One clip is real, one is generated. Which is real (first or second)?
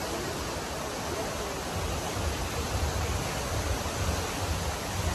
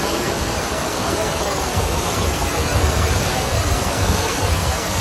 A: first